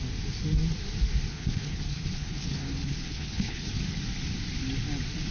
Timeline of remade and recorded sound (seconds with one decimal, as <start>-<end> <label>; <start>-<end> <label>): 0.0-1.3 recorded; 1.3-3.8 remade; 3.8-5.3 recorded